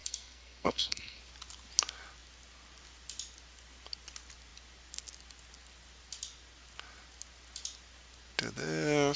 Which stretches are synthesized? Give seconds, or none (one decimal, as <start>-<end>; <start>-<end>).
0.0-1.2

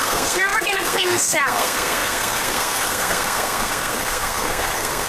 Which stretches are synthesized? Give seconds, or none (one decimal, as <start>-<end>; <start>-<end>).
0.0-5.1